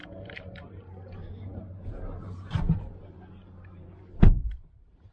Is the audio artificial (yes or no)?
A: yes